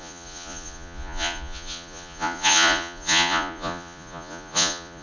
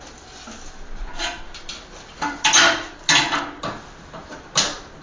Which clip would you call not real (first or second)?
first